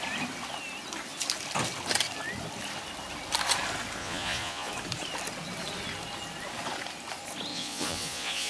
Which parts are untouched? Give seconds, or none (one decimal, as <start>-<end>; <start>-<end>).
0.0-4.0; 4.7-7.5